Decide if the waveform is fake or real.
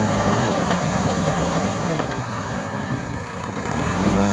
fake